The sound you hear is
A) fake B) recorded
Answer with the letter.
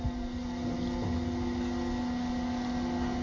B